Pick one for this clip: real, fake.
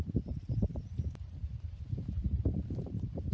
fake